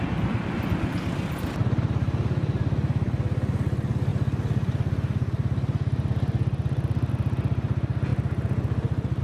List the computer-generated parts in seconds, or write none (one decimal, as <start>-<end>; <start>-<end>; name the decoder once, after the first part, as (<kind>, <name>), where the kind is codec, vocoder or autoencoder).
none